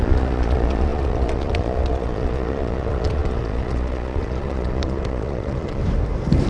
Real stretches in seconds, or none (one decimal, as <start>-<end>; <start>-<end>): 5.8-6.5